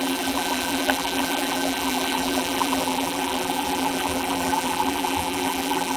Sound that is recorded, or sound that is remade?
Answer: remade